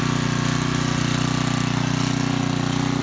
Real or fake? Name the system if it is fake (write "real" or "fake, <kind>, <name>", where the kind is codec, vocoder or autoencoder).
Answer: real